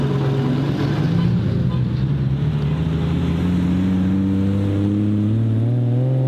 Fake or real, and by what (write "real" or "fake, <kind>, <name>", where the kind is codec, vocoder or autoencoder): real